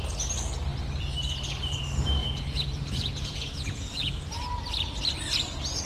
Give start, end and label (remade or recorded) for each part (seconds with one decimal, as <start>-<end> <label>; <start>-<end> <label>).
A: 0.0-2.2 recorded; 2.2-4.3 remade; 4.3-5.9 recorded